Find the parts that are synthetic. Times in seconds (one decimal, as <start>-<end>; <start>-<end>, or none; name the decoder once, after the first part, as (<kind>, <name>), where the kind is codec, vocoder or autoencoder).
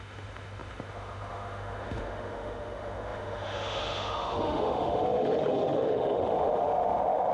0.0-7.3 (autoencoder, DAC-VAE)